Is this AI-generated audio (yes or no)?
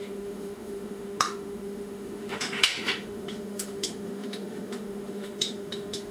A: yes